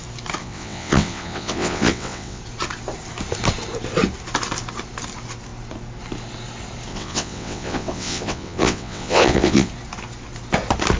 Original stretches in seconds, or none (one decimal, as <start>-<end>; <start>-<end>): 0.0-0.4; 2.4-6.9; 9.7-11.0